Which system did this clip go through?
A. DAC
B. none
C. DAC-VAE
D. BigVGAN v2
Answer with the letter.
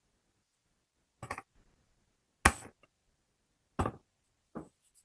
B